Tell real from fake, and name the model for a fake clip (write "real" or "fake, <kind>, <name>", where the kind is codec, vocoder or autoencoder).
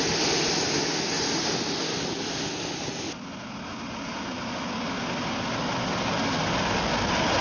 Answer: real